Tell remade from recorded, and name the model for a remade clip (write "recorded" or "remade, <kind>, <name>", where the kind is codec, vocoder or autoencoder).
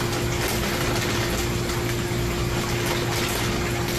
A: recorded